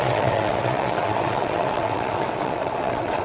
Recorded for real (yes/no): no